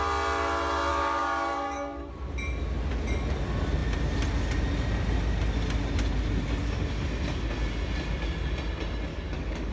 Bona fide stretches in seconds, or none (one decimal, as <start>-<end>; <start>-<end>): 0.0-0.9; 2.1-9.1